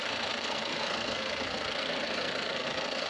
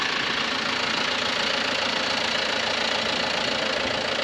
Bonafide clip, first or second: second